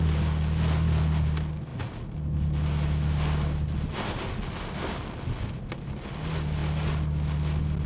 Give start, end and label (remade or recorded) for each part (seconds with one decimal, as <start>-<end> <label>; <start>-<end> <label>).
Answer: 0.0-7.9 recorded